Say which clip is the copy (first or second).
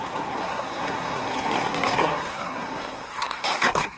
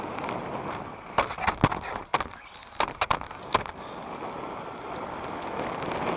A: first